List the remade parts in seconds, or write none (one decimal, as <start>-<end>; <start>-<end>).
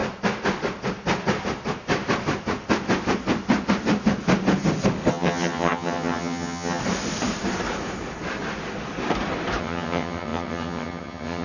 5.1-6.8; 9.6-11.4